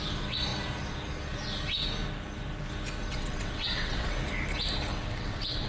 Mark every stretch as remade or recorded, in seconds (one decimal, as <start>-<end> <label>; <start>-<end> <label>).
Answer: 0.0-3.1 recorded; 3.1-4.2 remade; 4.2-4.9 recorded; 4.9-5.7 remade